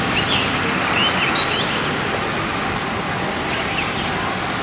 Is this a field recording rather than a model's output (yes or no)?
yes